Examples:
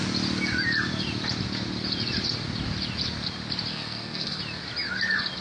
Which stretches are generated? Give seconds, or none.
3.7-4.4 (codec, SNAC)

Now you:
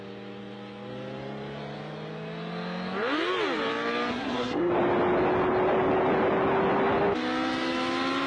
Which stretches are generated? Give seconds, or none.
4.1-4.7 (codec, SNAC)

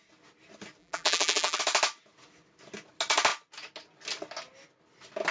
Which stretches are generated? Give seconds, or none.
0.8-1.6 (vocoder, BigVGAN v2)

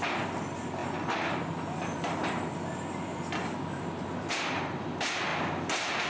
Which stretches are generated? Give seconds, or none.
none

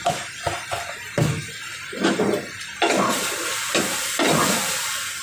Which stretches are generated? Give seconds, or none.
0.0-5.2 (vocoder, BigVGAN v2)